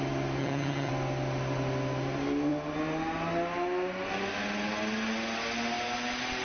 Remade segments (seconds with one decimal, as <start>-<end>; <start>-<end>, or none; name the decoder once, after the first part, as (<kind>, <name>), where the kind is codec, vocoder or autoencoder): 0.4-0.9 (vocoder, HiFi-GAN)